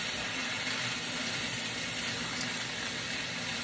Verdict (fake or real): real